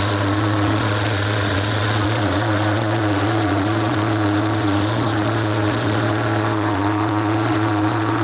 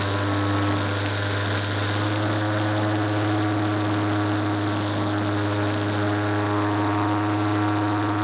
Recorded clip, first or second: second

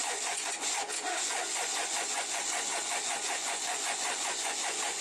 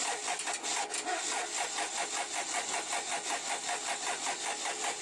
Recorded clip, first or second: second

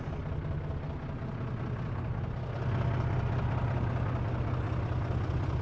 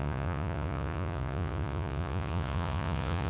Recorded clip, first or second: first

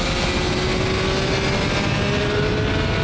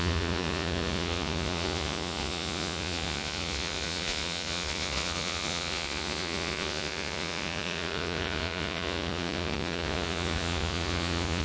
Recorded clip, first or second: first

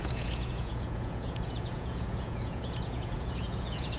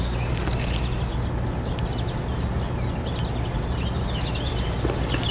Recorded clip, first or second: second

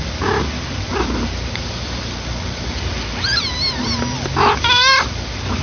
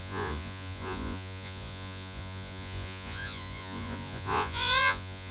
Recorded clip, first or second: first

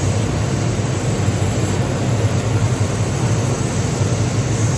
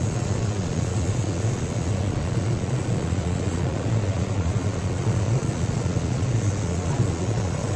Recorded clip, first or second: first